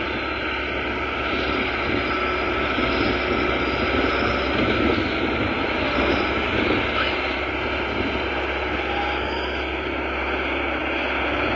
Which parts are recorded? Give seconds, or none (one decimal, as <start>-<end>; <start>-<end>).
0.0-11.6